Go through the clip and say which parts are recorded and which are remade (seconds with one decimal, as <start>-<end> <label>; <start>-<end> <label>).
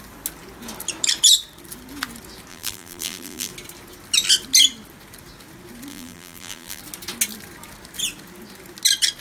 0.0-2.5 recorded; 2.5-3.5 remade; 3.5-5.9 recorded; 5.9-6.8 remade; 6.8-9.2 recorded